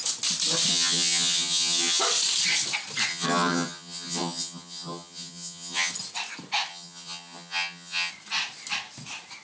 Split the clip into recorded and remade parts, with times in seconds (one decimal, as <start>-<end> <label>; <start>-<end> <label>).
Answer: 0.0-0.7 recorded; 0.7-2.0 remade; 2.0-3.1 recorded; 3.1-5.9 remade; 5.9-6.7 recorded; 6.7-8.1 remade; 8.1-9.4 recorded